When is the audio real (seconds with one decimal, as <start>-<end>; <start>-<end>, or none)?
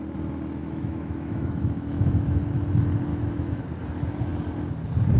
0.0-0.6; 2.4-3.1; 3.6-5.2